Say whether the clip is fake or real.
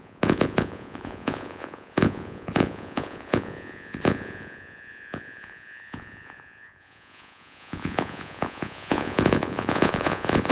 fake